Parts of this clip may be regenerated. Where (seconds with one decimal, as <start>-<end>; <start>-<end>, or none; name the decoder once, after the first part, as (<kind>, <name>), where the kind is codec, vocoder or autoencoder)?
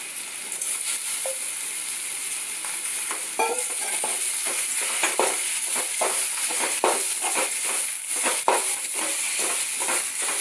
6.5-9.5 (vocoder, BigVGAN v2)